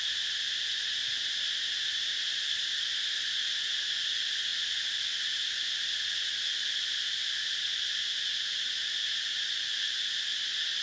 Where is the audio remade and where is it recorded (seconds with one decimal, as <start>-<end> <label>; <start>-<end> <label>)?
0.0-10.8 recorded

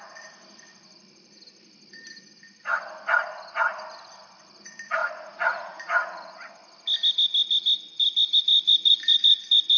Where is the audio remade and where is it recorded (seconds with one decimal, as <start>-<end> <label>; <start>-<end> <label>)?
0.0-5.0 recorded; 5.0-6.5 remade; 6.5-9.8 recorded

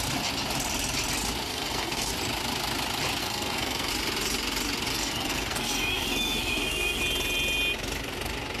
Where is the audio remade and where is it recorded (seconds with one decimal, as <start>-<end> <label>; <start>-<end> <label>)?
0.0-1.5 recorded; 1.5-2.1 remade; 2.1-3.2 recorded; 3.2-3.9 remade; 3.9-4.9 recorded; 4.9-7.0 remade; 7.0-8.6 recorded

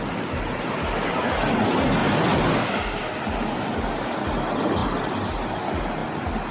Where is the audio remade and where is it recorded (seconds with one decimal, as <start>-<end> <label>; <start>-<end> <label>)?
0.0-4.8 recorded; 4.8-5.6 remade; 5.6-6.5 recorded

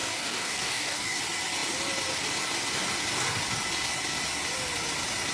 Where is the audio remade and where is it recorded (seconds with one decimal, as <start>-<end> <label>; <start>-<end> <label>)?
0.0-1.2 remade; 1.2-5.3 recorded

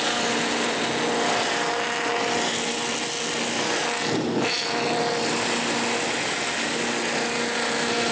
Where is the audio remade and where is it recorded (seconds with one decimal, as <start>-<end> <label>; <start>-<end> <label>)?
0.0-8.1 recorded